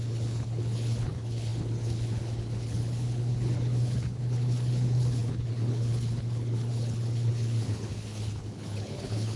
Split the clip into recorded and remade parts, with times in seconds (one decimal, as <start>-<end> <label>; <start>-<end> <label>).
0.0-9.4 remade